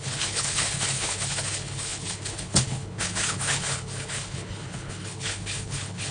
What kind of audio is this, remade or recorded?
remade